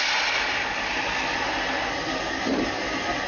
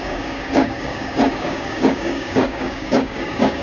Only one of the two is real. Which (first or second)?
first